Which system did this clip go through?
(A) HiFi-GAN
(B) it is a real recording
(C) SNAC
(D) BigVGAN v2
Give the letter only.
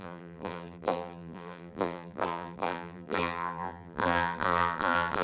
D